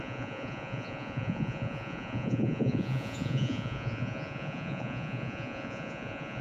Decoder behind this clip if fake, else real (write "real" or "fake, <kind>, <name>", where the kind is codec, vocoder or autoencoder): fake, vocoder, Vocos